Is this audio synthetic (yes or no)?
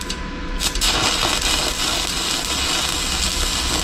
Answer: no